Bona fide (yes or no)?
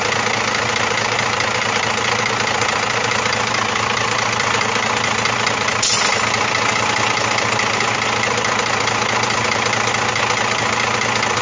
yes